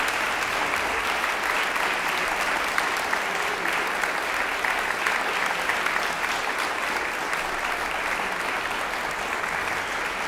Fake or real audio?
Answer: real